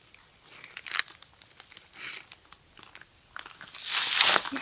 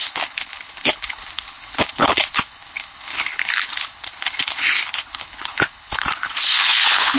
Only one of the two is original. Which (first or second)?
first